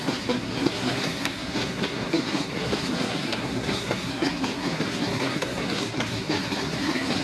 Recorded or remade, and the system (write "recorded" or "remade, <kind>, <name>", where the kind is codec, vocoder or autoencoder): remade, codec, SNAC